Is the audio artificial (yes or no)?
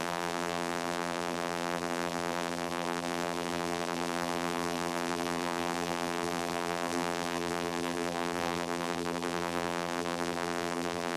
yes